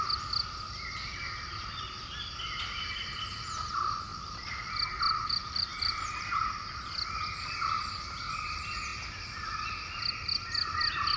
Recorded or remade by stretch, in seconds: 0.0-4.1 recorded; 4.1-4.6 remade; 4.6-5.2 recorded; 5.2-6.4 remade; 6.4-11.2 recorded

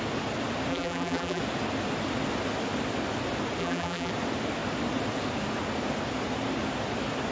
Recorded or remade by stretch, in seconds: 0.0-0.7 recorded; 0.7-1.4 remade; 1.4-3.6 recorded; 3.6-4.1 remade; 4.1-7.3 recorded

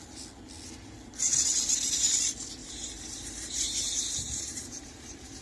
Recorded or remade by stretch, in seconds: 0.0-2.6 recorded; 2.6-5.4 remade

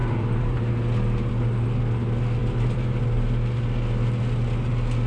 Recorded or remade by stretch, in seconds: 0.0-0.7 remade; 0.7-2.4 recorded; 2.4-3.0 remade; 3.0-5.1 recorded

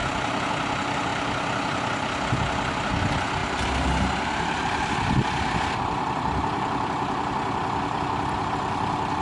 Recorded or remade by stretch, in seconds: 0.0-1.1 recorded; 1.1-2.9 remade; 2.9-3.4 recorded; 3.4-8.5 remade; 8.5-9.2 recorded

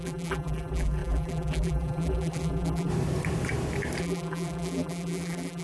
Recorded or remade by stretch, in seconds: 0.0-2.9 remade; 2.9-4.0 recorded; 4.0-5.6 remade

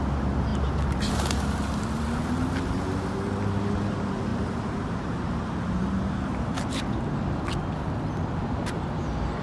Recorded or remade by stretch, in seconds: 0.0-4.3 recorded; 4.3-6.8 remade; 6.8-9.4 recorded

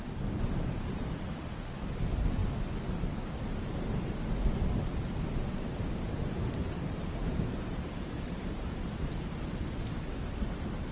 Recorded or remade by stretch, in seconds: 0.0-2.4 remade; 2.4-5.8 recorded; 5.8-10.9 remade